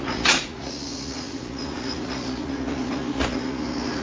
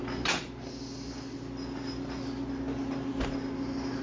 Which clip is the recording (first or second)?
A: second